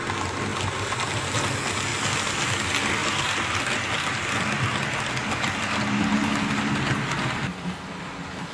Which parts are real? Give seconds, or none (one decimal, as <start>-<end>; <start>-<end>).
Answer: 0.0-8.5